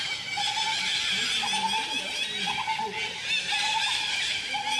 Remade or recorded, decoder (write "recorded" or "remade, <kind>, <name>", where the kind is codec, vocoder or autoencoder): recorded